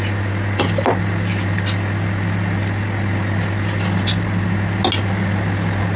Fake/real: real